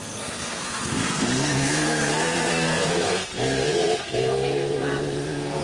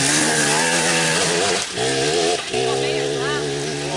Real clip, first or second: second